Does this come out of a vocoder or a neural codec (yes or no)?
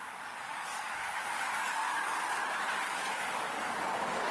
yes